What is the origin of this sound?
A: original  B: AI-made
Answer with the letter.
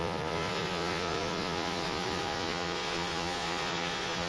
B